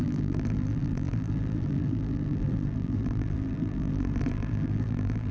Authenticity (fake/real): fake